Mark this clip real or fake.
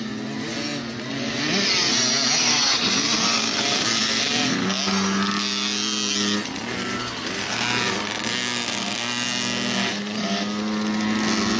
real